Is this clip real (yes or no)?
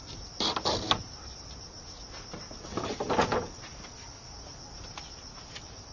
yes